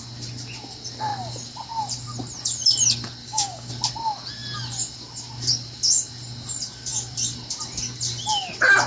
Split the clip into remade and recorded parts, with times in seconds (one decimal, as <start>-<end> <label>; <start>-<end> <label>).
0.0-3.2 recorded; 3.2-3.7 remade; 3.7-8.9 recorded